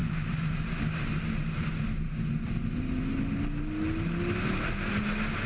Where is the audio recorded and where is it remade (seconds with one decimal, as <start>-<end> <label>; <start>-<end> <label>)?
0.0-5.5 recorded